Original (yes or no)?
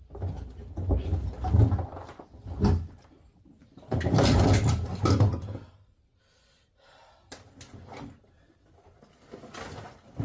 yes